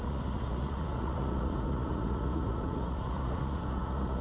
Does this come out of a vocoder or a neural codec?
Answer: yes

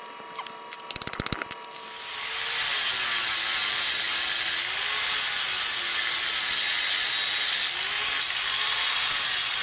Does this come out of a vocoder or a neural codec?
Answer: no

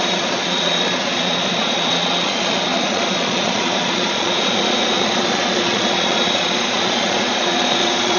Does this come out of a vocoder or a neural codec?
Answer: yes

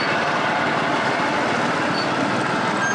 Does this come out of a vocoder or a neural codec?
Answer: no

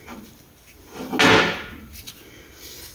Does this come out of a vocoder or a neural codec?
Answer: no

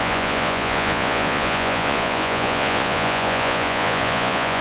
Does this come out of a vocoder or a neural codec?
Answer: yes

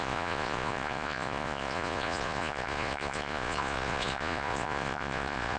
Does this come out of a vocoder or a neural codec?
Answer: yes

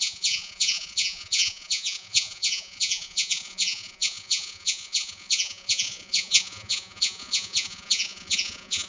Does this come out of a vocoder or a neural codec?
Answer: yes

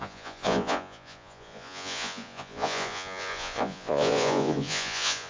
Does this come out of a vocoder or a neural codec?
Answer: yes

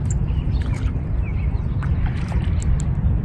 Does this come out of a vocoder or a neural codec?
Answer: no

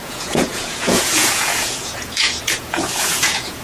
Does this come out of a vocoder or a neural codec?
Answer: yes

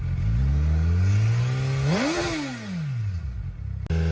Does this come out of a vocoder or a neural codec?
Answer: no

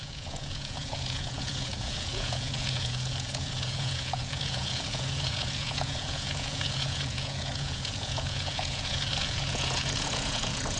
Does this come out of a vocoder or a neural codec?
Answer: yes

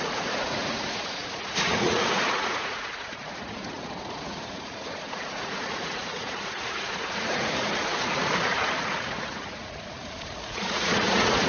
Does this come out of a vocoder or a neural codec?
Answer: yes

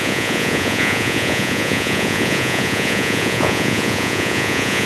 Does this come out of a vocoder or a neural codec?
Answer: yes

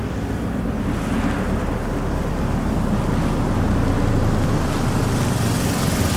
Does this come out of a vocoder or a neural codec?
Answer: no